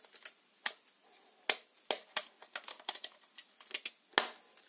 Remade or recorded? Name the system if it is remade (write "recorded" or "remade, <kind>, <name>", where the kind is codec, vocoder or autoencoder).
recorded